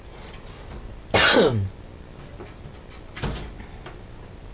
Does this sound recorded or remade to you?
recorded